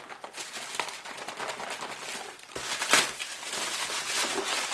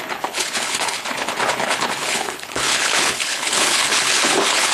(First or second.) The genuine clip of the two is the first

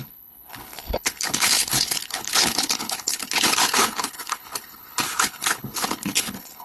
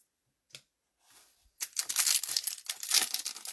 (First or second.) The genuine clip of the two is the second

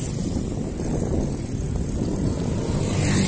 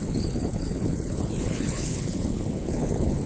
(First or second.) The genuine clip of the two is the first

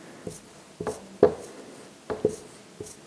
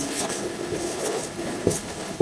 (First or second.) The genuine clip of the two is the first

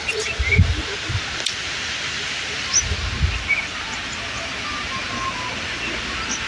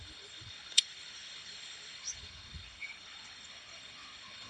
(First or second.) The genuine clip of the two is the first